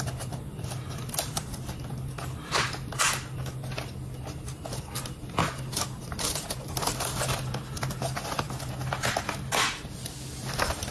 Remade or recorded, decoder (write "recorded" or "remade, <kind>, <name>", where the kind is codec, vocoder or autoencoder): recorded